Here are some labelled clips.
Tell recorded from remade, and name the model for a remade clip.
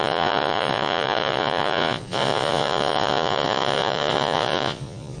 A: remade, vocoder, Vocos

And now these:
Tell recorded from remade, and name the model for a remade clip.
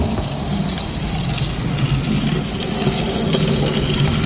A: recorded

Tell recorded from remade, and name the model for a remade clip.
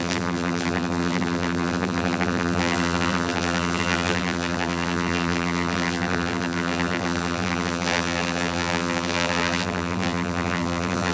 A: remade, vocoder, BigVGAN v2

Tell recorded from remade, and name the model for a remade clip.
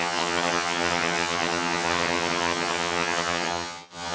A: remade, vocoder, HiFi-GAN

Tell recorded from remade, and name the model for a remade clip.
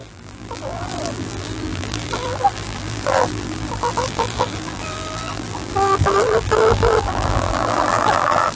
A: remade, vocoder, BigVGAN v2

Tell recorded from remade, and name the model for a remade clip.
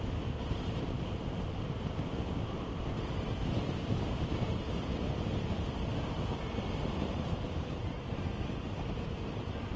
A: remade, vocoder, BigVGAN v2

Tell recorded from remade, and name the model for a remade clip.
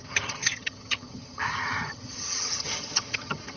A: remade, vocoder, HiFi-GAN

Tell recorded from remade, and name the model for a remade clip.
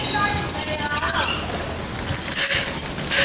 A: recorded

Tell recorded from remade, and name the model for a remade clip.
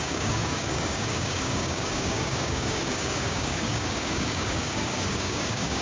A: remade, codec, DAC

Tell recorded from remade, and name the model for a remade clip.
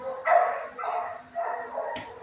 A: recorded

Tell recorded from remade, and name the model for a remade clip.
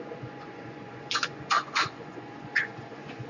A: remade, vocoder, Vocos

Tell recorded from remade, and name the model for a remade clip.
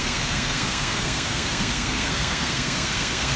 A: remade, codec, SNAC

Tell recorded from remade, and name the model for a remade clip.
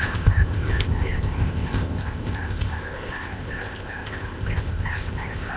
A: remade, codec, ZipCodec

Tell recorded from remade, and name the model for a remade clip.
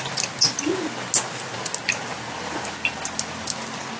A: recorded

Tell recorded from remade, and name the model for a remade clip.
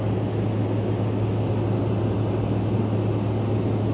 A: recorded